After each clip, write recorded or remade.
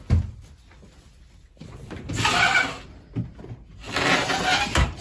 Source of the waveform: recorded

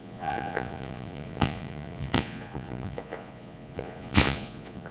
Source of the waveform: remade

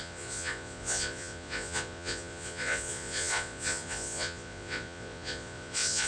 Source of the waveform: remade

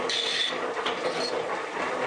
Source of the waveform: recorded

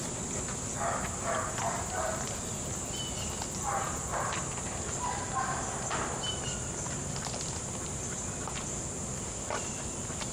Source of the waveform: recorded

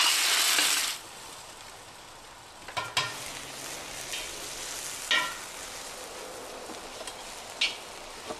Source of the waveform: recorded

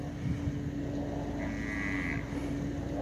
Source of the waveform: recorded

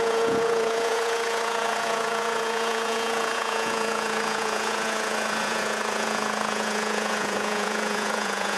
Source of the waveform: remade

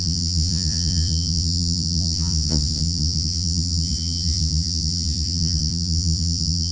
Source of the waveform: remade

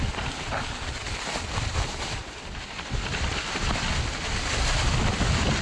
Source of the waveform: remade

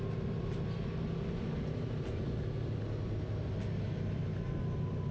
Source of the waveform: recorded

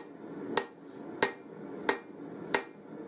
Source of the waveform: recorded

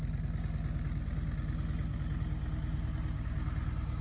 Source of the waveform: recorded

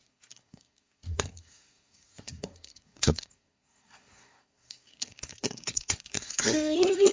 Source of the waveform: remade